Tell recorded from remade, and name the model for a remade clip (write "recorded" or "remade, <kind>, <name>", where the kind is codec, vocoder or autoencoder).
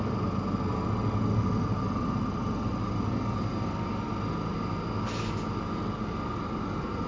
recorded